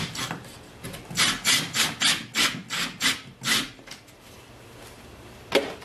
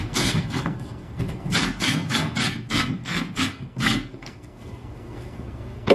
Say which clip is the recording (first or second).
first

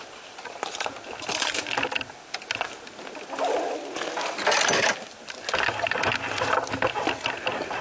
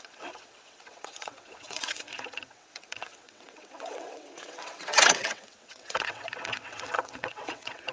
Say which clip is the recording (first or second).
first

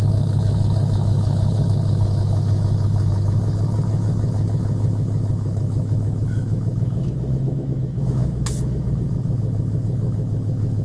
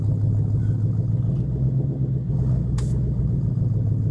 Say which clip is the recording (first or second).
second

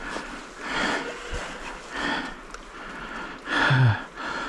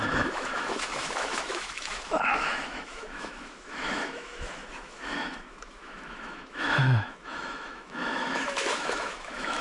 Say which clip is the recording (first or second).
first